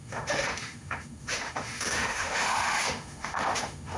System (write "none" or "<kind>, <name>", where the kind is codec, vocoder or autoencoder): autoencoder, DAC-VAE